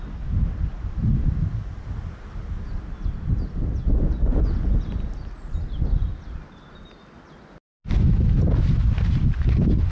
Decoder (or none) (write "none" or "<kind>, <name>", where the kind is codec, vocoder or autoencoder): none